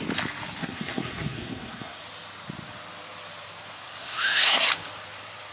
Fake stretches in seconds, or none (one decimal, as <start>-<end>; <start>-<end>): 0.6-2.0; 4.0-4.6